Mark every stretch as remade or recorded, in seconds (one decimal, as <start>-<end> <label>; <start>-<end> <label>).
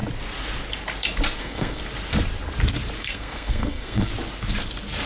0.0-1.4 recorded; 1.4-1.8 remade; 1.8-3.0 recorded; 3.0-4.1 remade; 4.1-5.1 recorded